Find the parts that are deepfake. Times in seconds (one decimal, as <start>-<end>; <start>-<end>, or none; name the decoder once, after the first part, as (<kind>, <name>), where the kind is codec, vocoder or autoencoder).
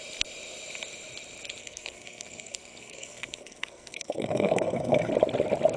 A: 1.6-5.1 (codec, SNAC)